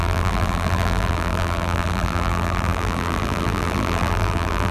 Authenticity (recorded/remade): remade